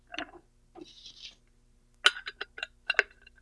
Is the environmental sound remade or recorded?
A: recorded